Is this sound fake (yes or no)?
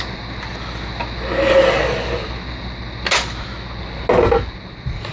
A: no